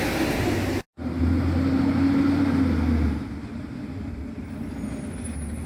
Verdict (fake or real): real